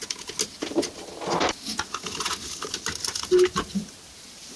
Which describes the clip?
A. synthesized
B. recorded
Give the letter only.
B